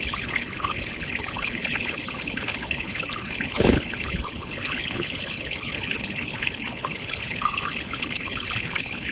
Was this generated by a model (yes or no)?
yes